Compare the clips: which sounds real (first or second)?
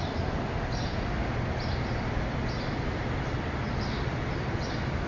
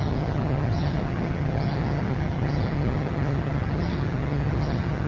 first